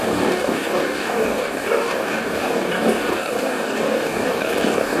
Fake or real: fake